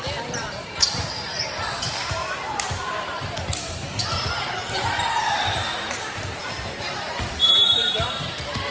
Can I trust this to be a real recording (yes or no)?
no